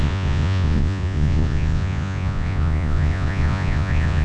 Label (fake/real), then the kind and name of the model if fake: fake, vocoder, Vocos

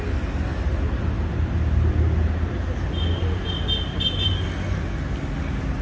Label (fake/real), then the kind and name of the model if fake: real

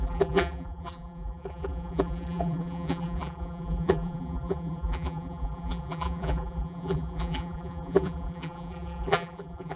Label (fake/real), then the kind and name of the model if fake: fake, vocoder, BigVGAN v2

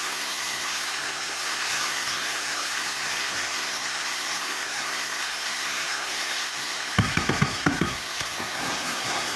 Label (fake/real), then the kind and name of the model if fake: fake, codec, SNAC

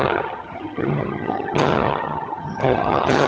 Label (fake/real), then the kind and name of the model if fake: fake, vocoder, HiFi-GAN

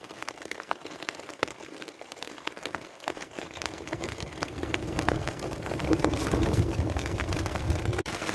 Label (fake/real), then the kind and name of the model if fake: fake, codec, SNAC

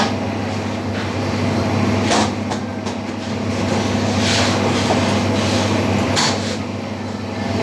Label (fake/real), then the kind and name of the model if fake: real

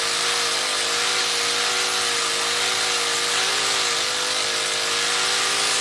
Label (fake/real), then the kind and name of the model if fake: real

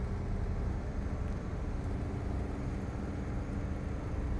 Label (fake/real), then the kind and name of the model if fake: real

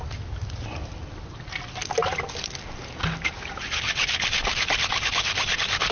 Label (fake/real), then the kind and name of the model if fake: real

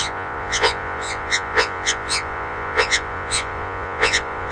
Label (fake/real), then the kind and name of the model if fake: fake, vocoder, Vocos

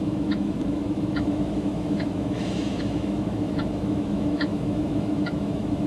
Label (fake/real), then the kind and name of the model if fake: fake, autoencoder, DAC-VAE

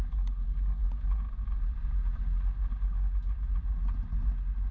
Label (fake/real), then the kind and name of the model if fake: real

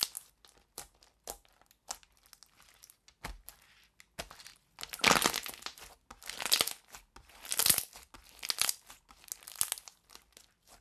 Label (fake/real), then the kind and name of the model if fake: real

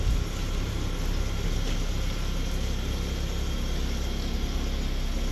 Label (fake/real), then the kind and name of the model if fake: real